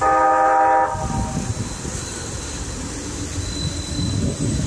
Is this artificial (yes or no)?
no